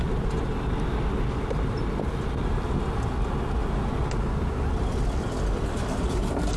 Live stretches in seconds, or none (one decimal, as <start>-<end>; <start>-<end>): 0.0-6.6